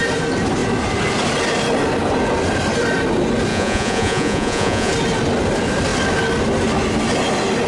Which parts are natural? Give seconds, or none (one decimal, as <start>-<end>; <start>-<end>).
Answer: 0.0-3.5; 4.9-7.7